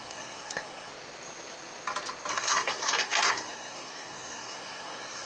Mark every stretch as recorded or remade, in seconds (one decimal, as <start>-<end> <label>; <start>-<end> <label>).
0.0-0.9 remade; 0.9-2.3 recorded; 2.3-5.3 remade